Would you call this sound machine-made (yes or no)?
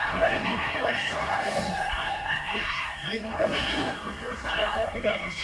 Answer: yes